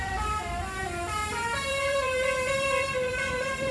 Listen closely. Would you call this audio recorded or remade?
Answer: remade